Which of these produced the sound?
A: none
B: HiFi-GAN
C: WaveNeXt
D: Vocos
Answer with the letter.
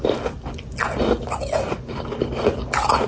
A